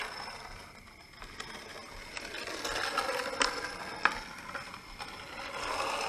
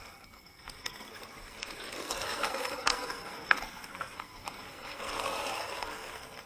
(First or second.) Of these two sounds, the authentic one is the first